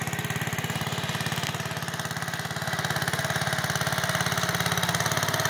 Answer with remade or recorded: recorded